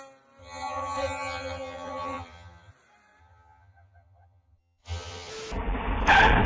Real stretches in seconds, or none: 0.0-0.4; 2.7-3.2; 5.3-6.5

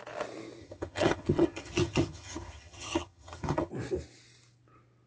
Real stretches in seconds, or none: 0.0-0.6; 3.7-5.1

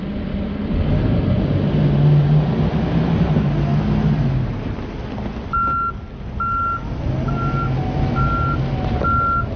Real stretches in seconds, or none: 0.0-9.6